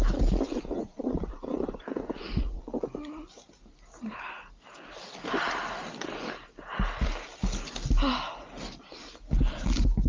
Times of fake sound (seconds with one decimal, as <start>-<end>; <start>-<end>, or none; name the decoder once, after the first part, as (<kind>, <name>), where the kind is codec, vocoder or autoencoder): 0.5-2.6 (vocoder, Vocos)